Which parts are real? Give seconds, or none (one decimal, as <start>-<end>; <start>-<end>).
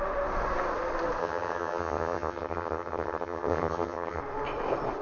0.0-1.2; 4.2-5.0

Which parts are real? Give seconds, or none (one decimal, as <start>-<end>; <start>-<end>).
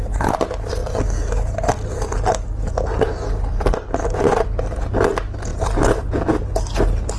0.0-7.2